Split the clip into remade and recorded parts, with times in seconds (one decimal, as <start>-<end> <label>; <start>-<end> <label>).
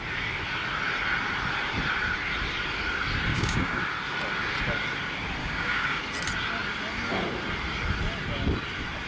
0.0-3.3 recorded; 3.3-3.8 remade; 3.8-5.4 recorded; 5.4-6.0 remade; 6.0-9.1 recorded